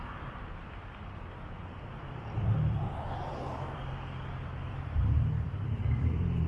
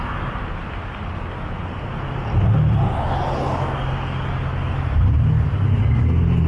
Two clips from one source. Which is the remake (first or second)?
first